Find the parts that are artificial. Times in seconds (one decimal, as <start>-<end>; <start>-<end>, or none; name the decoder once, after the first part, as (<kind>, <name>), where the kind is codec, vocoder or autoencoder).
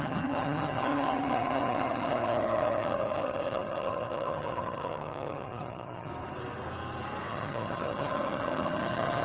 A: 0.0-6.1 (vocoder, HiFi-GAN); 7.3-9.2